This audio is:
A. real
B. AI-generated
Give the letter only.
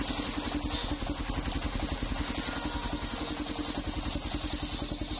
A